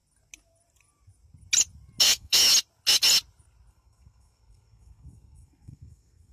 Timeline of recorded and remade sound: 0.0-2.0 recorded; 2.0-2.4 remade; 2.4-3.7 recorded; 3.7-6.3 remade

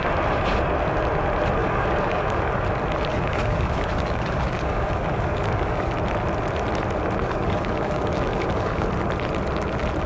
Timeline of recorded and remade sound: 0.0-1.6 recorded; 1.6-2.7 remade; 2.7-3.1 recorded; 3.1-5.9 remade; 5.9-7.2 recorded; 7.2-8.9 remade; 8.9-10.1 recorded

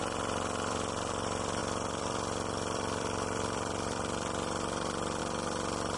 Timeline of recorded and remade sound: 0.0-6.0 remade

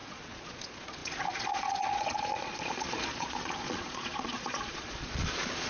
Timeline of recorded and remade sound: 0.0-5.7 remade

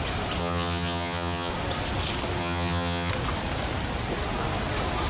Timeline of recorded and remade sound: 0.0-0.4 recorded; 0.4-1.5 remade; 1.5-2.4 recorded; 2.4-3.1 remade; 3.1-5.1 recorded